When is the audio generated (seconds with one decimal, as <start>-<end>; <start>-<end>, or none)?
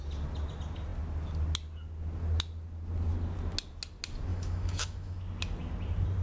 4.3-5.2